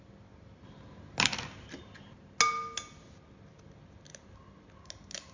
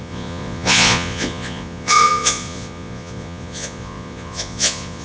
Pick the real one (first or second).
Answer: first